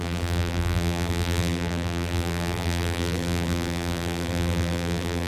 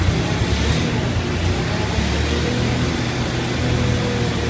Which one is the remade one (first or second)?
first